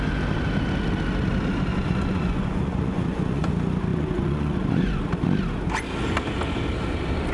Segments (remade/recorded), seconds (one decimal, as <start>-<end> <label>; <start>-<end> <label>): 0.0-1.7 recorded; 1.7-3.5 remade; 3.5-3.9 recorded; 3.9-5.0 remade; 5.0-7.3 recorded